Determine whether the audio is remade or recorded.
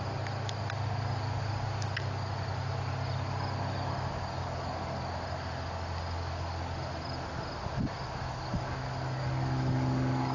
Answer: recorded